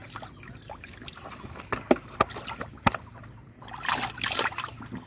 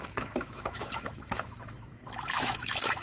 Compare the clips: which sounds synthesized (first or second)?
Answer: second